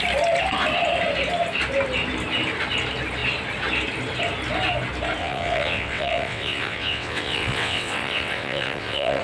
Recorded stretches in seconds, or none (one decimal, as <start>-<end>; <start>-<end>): 0.0-5.2